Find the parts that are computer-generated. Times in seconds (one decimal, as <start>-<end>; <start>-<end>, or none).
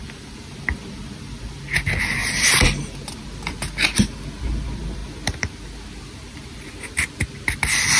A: 0.0-1.6; 2.2-3.4